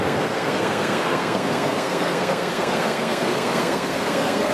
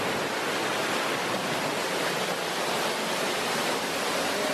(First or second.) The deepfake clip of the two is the first